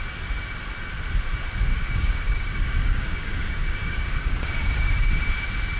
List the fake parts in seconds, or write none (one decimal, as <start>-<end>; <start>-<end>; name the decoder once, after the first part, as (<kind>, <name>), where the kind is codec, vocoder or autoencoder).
1.7-5.2 (codec, DAC)